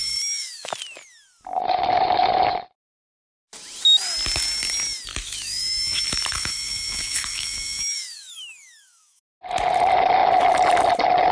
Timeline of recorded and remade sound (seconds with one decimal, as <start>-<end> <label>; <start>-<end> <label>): 0.0-0.7 remade; 0.7-5.1 recorded; 5.1-9.2 remade; 9.2-11.3 recorded